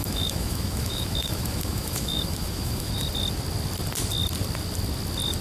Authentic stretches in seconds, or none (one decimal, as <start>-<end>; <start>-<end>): 2.9-5.4